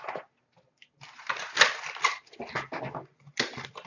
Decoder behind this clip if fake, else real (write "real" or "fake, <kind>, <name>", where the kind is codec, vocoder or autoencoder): real